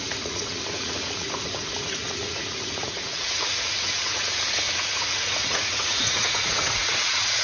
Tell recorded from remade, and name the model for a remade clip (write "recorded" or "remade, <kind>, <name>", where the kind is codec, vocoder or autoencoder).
remade, vocoder, Vocos